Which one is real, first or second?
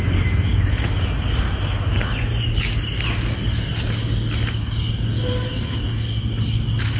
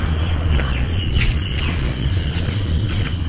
first